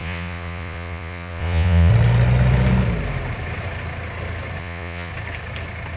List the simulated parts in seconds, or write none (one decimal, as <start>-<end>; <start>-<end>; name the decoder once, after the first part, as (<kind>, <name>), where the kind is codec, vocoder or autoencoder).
0.0-1.9 (vocoder, Vocos); 4.6-5.1